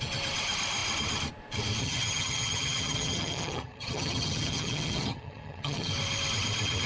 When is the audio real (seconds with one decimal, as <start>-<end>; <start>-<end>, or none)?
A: 0.0-1.8; 5.9-6.9